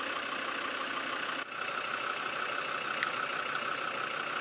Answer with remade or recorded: recorded